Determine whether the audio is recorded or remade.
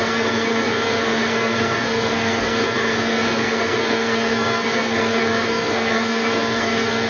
remade